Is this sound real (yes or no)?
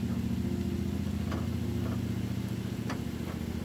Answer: yes